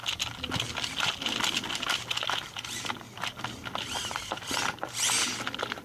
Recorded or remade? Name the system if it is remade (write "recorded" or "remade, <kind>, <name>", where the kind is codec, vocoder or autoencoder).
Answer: recorded